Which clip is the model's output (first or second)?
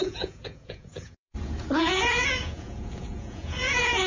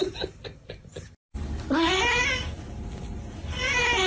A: first